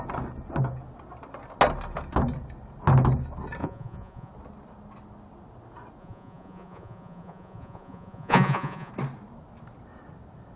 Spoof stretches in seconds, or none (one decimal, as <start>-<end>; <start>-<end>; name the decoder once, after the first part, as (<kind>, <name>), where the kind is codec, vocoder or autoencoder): 3.6-4.3 (vocoder, Vocos); 6.0-8.9